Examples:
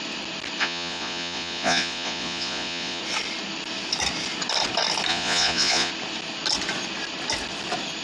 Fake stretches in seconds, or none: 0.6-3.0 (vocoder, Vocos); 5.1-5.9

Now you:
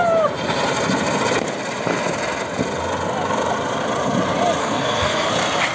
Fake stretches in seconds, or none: 4.6-5.3 (codec, SNAC)

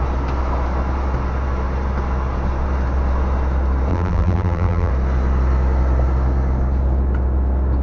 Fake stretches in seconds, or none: 3.9-4.9 (vocoder, BigVGAN v2)

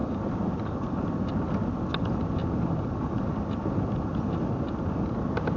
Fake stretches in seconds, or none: none